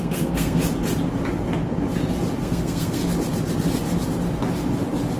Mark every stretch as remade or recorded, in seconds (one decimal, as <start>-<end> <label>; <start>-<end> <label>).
0.0-0.6 remade; 0.6-2.4 recorded; 2.4-3.0 remade; 3.0-5.2 recorded